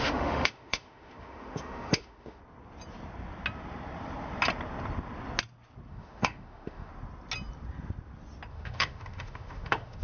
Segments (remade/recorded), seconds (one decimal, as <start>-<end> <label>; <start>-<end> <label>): 0.0-2.4 remade; 2.4-5.9 recorded; 5.9-6.9 remade; 6.9-8.5 recorded; 8.5-10.0 remade